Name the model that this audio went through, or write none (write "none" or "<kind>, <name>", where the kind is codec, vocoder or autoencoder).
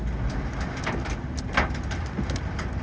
none